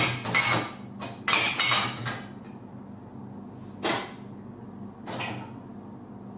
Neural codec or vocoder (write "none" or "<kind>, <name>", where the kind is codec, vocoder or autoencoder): none